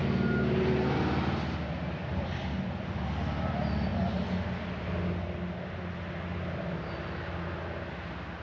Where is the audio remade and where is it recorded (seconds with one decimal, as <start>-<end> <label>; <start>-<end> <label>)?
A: 0.0-8.4 recorded

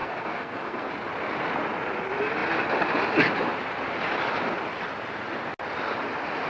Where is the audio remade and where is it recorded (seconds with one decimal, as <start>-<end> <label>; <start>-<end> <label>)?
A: 0.0-0.9 remade; 0.9-6.5 recorded

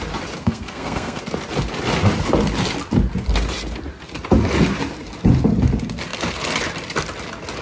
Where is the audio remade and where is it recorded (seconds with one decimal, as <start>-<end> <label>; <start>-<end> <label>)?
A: 0.0-0.4 recorded; 0.4-1.2 remade; 1.2-7.6 recorded